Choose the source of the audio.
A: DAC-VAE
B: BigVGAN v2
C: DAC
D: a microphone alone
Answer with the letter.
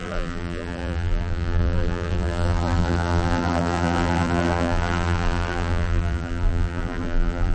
B